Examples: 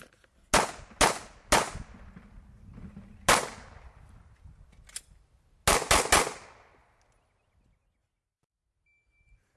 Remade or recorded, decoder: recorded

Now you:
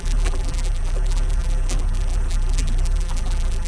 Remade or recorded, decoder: remade, vocoder, BigVGAN v2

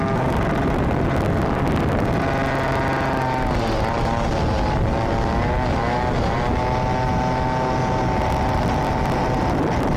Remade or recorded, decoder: recorded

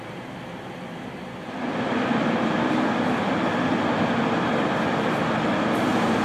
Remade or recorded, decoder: remade, vocoder, BigVGAN v2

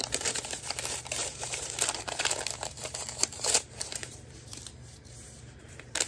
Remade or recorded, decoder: remade, vocoder, BigVGAN v2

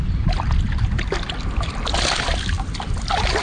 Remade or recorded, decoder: recorded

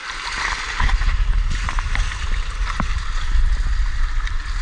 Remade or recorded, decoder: recorded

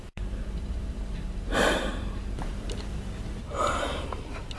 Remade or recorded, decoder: remade, vocoder, BigVGAN v2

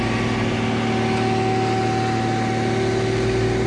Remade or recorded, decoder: recorded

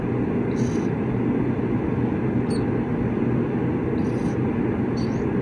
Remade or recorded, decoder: recorded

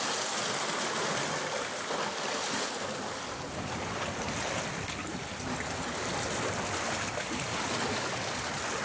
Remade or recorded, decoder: recorded